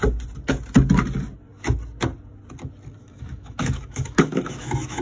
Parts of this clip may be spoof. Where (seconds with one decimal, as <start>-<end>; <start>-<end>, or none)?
3.0-5.0